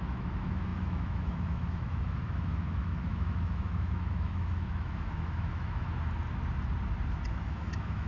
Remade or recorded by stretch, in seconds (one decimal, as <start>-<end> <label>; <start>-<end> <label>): 0.0-5.9 remade; 5.9-7.3 recorded; 7.3-8.1 remade